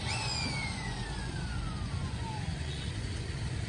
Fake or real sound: fake